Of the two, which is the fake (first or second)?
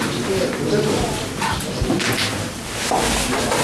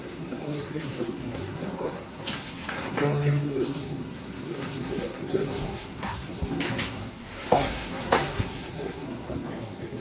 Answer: second